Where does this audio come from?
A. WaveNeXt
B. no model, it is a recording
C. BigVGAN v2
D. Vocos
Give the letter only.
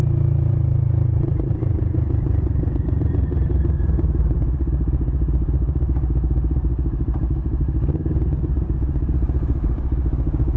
C